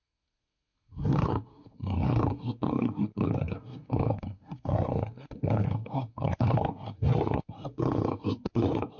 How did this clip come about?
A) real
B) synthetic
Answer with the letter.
B